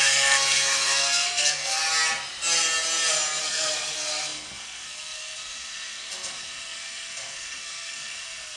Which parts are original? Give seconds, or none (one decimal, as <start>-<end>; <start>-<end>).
1.8-3.4